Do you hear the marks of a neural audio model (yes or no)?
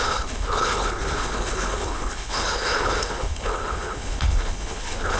yes